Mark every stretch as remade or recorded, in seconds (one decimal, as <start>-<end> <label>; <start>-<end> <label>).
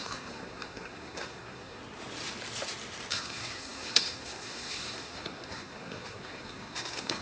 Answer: 0.0-1.8 remade; 1.8-3.1 recorded; 3.1-7.2 remade